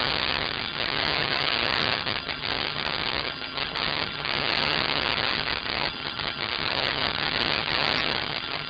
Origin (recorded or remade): remade